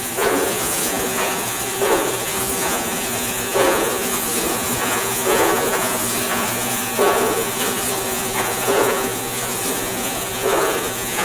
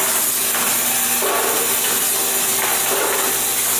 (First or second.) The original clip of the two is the second